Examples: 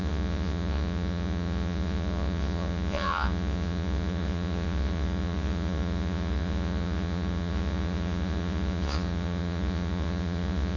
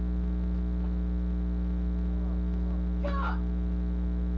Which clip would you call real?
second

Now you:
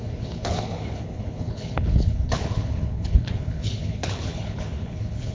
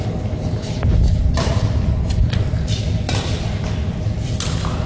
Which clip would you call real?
second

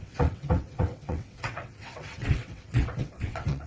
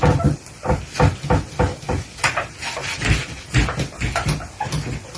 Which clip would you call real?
second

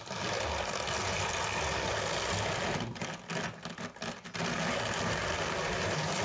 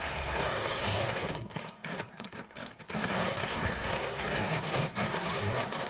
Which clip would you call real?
first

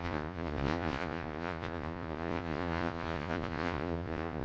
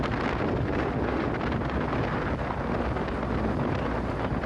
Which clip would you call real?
second